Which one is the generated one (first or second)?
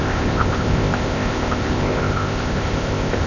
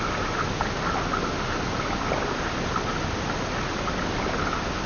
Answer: first